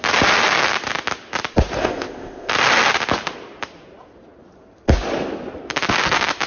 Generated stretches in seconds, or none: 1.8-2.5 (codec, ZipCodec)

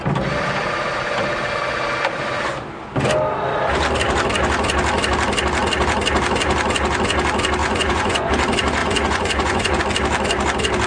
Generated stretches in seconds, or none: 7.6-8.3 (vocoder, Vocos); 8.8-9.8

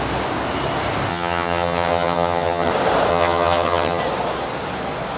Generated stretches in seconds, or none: 1.1-2.7 (vocoder, HiFi-GAN); 3.1-4.0

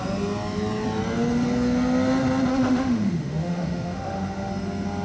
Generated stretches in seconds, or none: 2.5-4.5 (autoencoder, DAC-VAE)

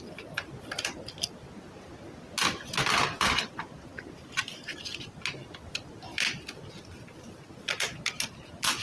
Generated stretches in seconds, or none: none